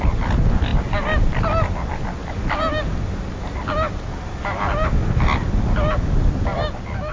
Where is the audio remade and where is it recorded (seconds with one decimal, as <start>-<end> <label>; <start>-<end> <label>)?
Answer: 0.0-7.1 recorded